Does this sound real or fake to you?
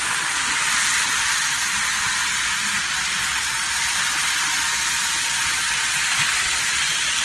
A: real